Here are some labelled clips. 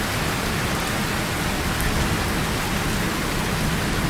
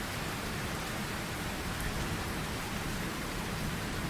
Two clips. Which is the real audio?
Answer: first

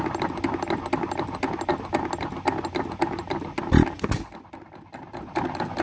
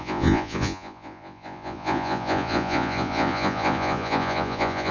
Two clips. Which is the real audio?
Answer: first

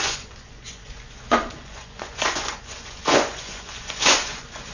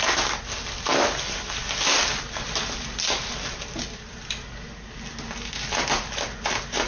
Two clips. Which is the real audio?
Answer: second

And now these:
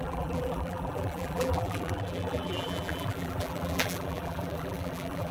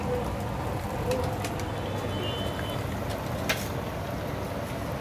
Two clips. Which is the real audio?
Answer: second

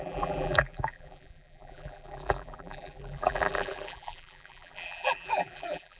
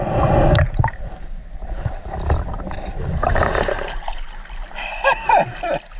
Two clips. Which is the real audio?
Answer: second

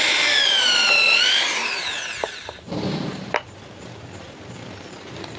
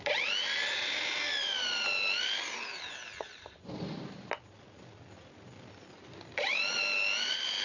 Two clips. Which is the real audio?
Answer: second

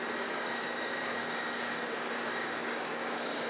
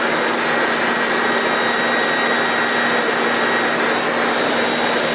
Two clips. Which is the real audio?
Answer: second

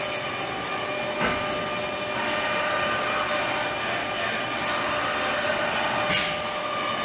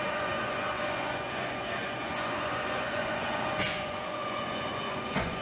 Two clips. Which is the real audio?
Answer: first